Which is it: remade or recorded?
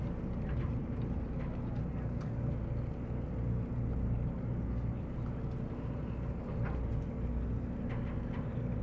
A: recorded